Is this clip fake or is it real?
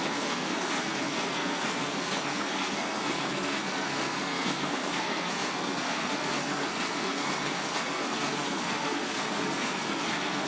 fake